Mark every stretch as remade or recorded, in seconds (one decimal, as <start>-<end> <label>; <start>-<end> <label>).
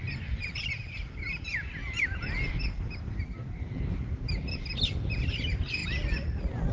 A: 0.0-6.7 recorded